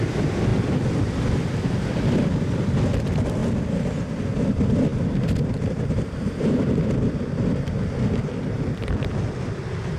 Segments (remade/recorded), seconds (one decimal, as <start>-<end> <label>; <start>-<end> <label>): 0.0-3.4 remade; 3.4-4.4 recorded; 4.4-10.0 remade